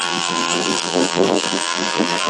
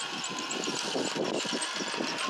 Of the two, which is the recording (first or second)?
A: second